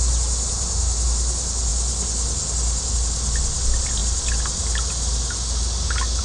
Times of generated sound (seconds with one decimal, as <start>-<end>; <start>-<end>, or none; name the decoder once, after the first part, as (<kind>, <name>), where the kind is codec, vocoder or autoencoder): none